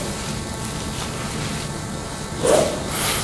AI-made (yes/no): yes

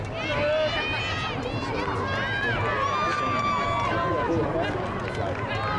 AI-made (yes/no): no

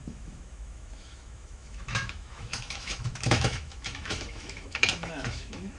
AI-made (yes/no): yes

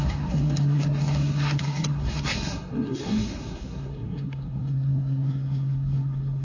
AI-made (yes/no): yes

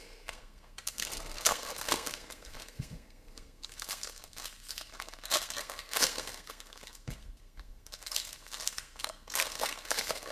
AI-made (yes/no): yes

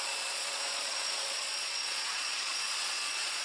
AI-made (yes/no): yes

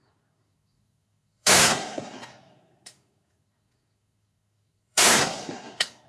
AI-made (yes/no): yes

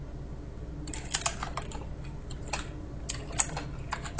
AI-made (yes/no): no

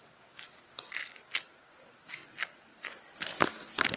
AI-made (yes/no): no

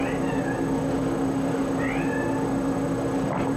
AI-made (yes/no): no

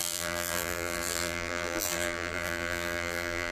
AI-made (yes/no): yes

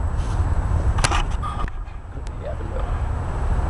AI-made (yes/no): no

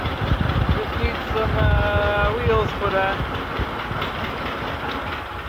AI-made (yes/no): no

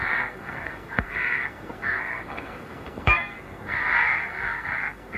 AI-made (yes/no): yes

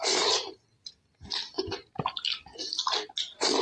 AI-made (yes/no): no